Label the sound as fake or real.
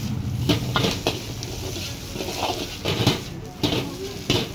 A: real